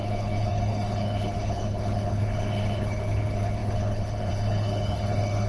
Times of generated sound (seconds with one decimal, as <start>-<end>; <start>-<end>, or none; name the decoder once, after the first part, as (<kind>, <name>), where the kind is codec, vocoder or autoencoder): 0.0-5.5 (codec, HILCodec)